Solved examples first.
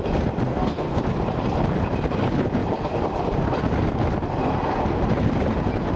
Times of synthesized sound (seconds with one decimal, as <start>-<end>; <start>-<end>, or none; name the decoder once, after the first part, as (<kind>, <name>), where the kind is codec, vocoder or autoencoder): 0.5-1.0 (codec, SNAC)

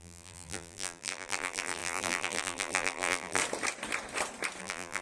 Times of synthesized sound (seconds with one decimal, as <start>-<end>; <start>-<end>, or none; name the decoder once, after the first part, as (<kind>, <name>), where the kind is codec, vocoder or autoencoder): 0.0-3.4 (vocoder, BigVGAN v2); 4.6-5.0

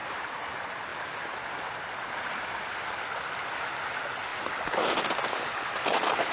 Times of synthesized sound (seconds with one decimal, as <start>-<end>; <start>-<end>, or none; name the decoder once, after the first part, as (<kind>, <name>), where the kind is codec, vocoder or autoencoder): none